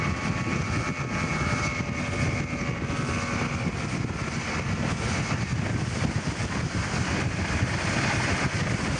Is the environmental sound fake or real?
real